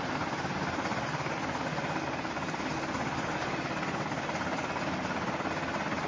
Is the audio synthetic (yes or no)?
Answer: no